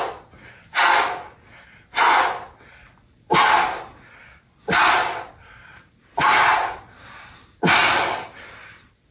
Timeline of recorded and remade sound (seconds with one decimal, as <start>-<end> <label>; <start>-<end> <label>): 0.0-0.8 remade; 0.8-4.2 recorded; 4.2-9.1 remade